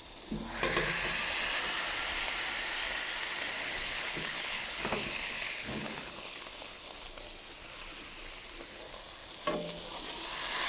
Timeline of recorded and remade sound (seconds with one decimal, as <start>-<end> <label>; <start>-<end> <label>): 0.0-3.6 recorded; 3.6-7.2 remade; 7.2-10.7 recorded